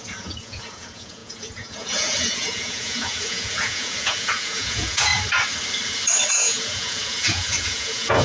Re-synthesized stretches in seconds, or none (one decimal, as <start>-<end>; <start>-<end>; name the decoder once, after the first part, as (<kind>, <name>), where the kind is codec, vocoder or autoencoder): 0.0-5.1 (vocoder, Vocos); 6.3-8.2